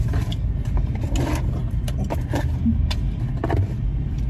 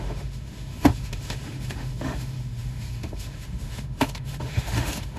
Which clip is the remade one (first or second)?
second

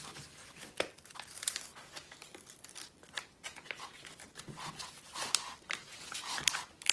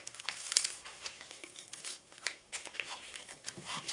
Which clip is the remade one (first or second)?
second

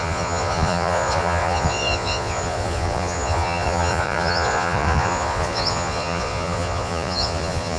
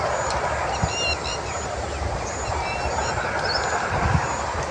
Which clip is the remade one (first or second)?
first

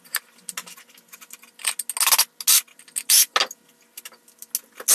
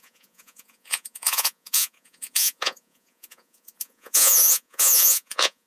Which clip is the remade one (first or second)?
second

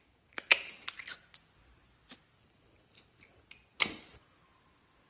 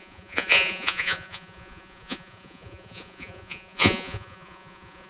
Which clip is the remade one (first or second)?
second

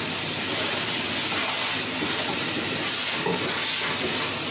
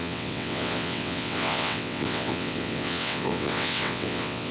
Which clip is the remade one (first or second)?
second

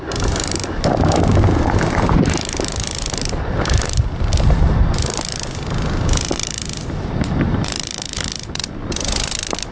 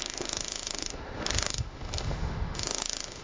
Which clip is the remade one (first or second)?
second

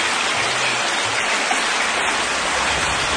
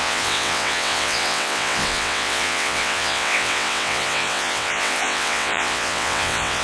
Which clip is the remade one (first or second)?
second